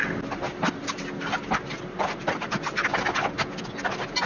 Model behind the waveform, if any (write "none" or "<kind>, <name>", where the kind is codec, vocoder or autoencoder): none